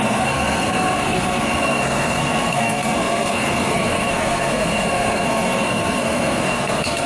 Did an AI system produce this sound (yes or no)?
yes